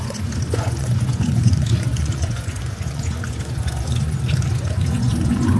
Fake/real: fake